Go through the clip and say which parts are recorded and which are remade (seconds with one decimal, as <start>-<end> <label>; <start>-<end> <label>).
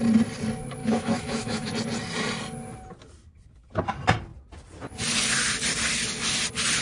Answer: 0.0-0.8 recorded; 0.8-1.7 remade; 1.7-6.8 recorded